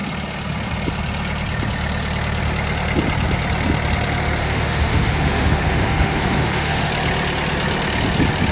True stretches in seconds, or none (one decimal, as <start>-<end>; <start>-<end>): 0.0-4.4; 6.9-8.5